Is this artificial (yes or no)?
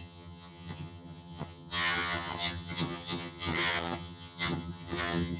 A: yes